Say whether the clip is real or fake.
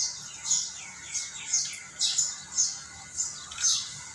real